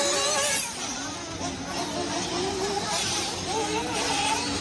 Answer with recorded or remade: recorded